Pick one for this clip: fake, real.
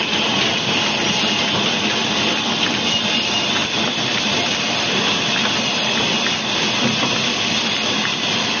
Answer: real